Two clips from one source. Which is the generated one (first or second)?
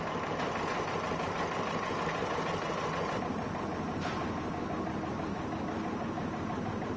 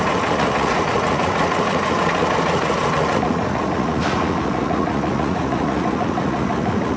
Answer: second